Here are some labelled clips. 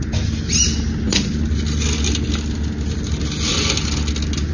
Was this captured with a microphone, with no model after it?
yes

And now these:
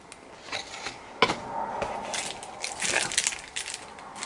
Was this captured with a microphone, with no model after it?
yes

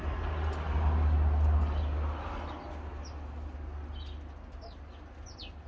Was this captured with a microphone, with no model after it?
yes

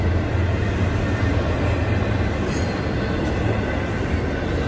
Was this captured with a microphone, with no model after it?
yes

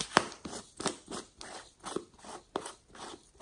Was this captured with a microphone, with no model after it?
yes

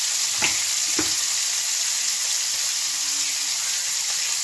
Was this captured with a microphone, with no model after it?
yes